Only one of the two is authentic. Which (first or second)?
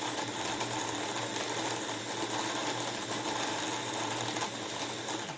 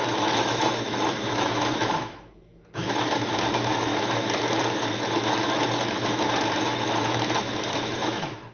first